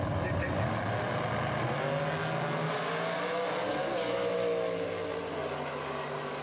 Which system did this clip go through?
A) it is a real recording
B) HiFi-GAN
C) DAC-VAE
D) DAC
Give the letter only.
A